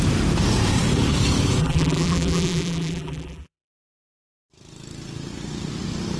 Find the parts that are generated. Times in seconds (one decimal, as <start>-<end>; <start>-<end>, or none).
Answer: 1.6-4.2